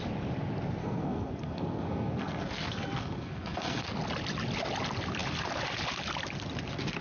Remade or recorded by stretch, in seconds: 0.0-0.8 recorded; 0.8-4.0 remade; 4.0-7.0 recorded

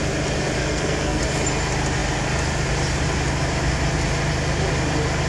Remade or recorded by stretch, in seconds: 0.0-0.6 recorded; 0.6-1.2 remade; 1.2-5.3 recorded

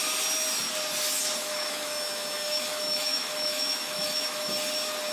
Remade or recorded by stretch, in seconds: 0.0-1.4 recorded; 1.4-4.5 remade; 4.5-5.1 recorded

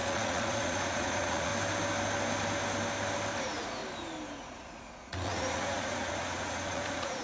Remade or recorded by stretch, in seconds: 0.0-1.5 remade; 1.5-3.4 recorded; 3.4-3.8 remade; 3.8-4.4 recorded; 4.4-7.2 remade